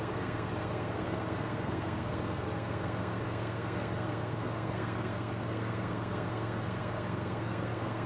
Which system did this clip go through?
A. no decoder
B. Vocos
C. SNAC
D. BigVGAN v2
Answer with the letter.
C